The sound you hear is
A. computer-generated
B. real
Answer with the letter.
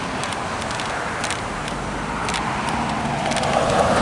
B